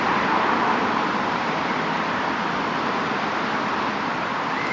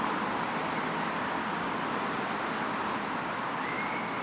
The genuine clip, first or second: second